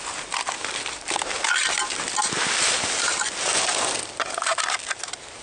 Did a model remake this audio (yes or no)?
no